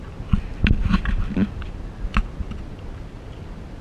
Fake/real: real